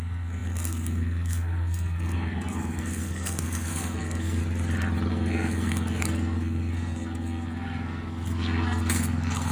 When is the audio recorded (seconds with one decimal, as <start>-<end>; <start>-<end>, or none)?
4.4-5.1